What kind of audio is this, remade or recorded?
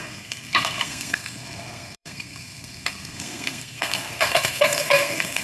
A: remade